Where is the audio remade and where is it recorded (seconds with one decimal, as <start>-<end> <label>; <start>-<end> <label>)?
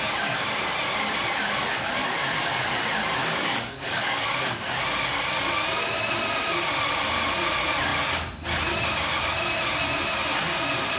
0.0-2.0 recorded; 2.0-2.6 remade; 2.6-3.2 recorded; 3.2-4.6 remade; 4.6-11.0 recorded